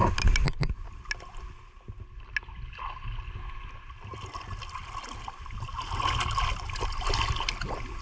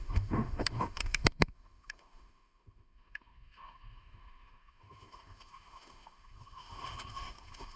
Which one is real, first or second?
first